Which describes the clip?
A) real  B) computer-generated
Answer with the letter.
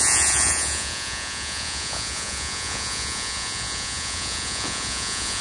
B